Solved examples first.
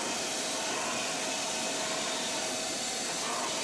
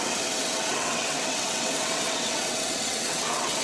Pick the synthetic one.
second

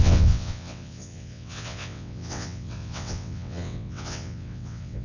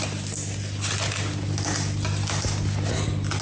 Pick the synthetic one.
first